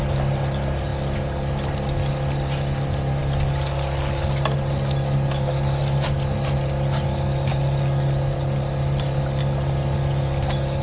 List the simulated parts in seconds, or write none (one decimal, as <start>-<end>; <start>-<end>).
none